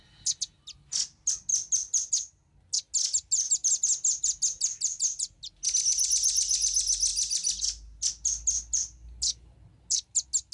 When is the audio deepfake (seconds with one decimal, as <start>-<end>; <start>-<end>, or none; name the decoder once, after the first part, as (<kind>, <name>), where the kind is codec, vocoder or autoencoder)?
1.5-2.1 (vocoder, BigVGAN v2)